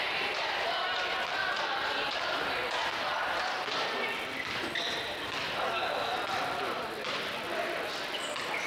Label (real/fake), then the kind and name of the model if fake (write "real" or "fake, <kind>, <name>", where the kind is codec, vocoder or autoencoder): real